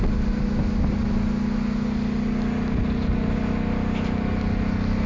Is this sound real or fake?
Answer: real